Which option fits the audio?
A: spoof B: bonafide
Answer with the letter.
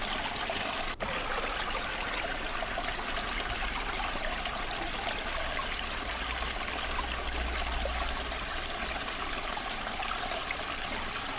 B